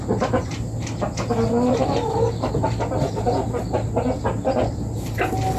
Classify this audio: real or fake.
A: real